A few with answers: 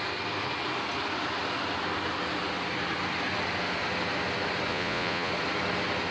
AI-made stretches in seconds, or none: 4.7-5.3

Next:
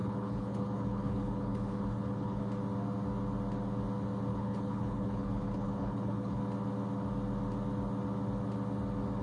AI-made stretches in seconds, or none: 0.0-2.4; 4.3-6.4

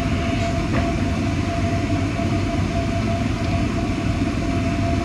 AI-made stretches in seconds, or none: none

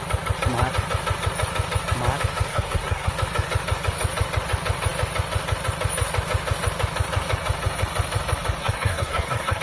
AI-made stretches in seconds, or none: 2.5-3.1; 8.6-9.6

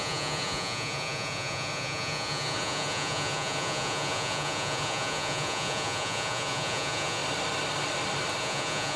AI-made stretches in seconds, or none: 0.0-7.2; 8.4-9.0

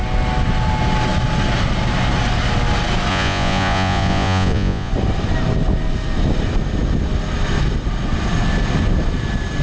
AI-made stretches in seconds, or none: 3.1-4.9